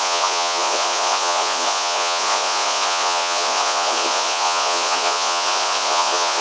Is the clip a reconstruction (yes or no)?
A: yes